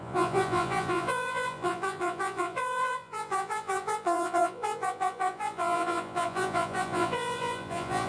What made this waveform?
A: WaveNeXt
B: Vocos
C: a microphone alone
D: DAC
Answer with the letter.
B